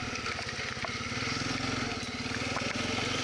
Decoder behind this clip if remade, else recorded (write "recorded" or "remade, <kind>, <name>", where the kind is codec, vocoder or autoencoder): recorded